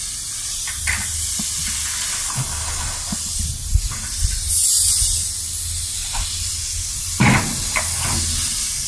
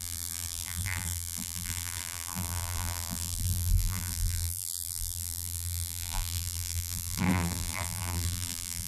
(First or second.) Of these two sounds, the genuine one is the first